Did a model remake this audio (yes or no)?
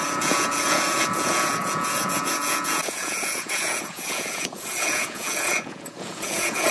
yes